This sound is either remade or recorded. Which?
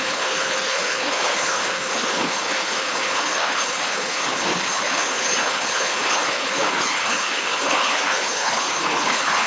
remade